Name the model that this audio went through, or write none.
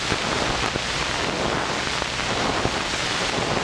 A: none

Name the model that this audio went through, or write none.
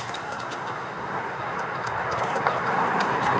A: codec, SNAC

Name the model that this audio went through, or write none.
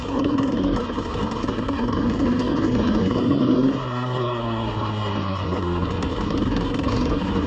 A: codec, SNAC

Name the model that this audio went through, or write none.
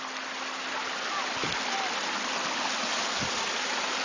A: none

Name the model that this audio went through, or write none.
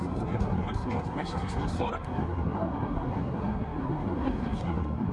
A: codec, SNAC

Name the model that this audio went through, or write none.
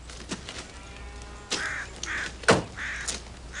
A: none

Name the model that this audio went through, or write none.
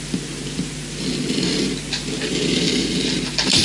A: none